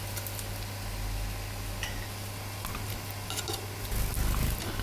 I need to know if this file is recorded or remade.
recorded